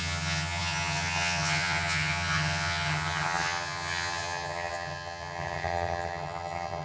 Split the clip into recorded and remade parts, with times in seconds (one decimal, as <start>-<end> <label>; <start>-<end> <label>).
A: 0.0-6.8 remade